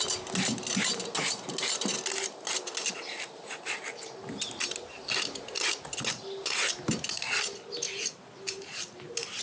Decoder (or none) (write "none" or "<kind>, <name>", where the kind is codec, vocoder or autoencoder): none